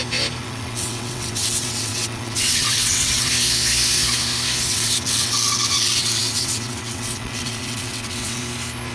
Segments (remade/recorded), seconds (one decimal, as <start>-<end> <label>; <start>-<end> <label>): 0.0-0.4 recorded; 0.4-3.3 remade; 3.3-4.7 recorded; 4.7-8.4 remade; 8.4-8.9 recorded